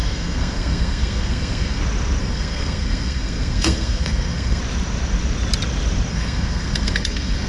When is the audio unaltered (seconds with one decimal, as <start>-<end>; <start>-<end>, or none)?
1.8-2.2; 4.6-6.1